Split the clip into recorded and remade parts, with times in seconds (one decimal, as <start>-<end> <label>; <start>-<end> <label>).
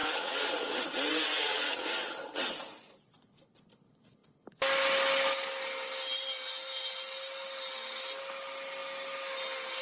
0.0-2.5 remade; 2.5-9.8 recorded